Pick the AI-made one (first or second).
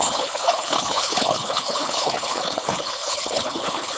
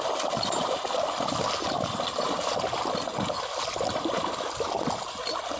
first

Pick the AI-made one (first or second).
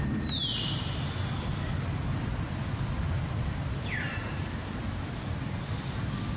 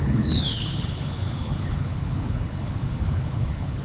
second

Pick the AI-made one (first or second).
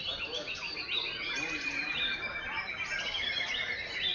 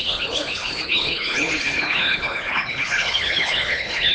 second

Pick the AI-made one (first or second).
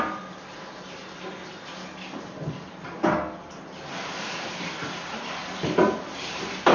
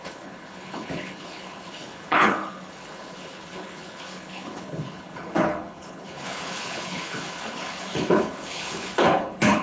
second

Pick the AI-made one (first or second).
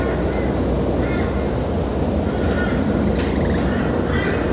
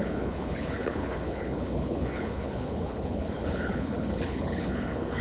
second